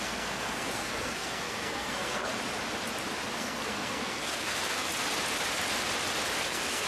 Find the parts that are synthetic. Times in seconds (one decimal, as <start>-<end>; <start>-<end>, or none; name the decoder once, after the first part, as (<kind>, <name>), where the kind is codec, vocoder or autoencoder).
0.0-2.3 (codec, SNAC); 3.3-4.9; 6.4-6.9